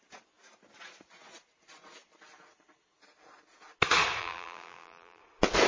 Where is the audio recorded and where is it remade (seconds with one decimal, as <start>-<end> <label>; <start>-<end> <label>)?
0.0-4.2 recorded; 4.2-5.2 remade; 5.2-5.7 recorded